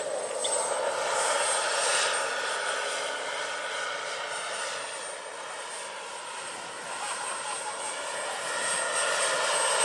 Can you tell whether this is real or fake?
real